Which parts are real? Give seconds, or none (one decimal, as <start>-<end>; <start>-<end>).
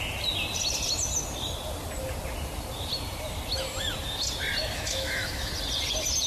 0.0-4.6; 5.5-6.3